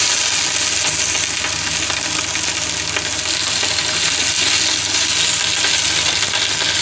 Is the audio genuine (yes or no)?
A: yes